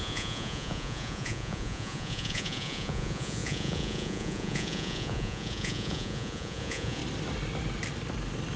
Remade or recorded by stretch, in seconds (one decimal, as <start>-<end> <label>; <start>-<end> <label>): 0.0-7.0 remade; 7.0-8.6 recorded